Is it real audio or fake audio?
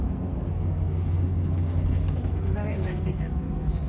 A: fake